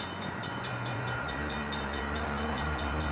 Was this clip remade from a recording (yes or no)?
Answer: yes